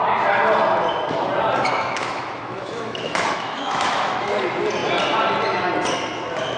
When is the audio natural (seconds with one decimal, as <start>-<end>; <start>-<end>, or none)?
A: 0.0-1.7; 4.3-6.6